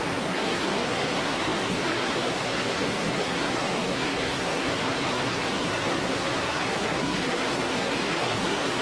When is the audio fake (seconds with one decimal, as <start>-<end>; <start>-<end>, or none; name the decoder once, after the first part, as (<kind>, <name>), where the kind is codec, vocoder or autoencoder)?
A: 0.0-8.8 (codec, SNAC)